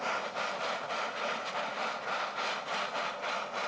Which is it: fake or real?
real